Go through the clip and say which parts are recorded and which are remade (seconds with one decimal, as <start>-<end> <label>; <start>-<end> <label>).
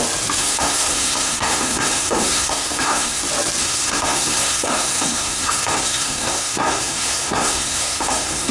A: 0.0-0.4 recorded; 0.4-3.2 remade; 3.2-3.6 recorded; 3.6-8.5 remade